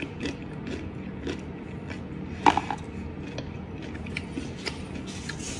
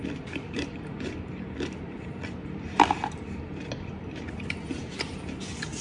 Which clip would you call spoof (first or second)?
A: second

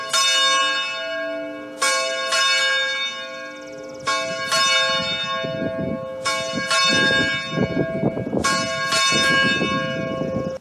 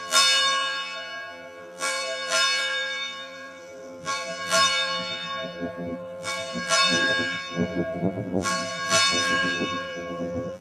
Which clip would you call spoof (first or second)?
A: second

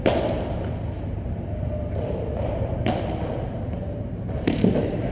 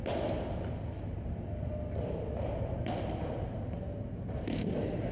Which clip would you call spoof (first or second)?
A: first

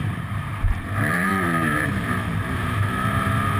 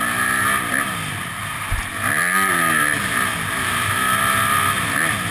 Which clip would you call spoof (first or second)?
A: first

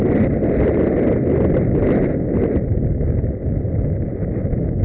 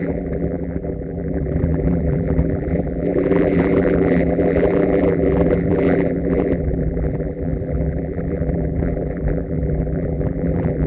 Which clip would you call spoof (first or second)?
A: second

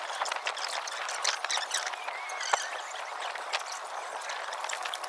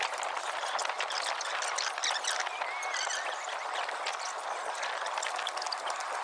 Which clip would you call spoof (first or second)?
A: first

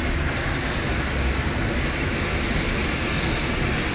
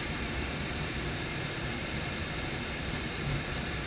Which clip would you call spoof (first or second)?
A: second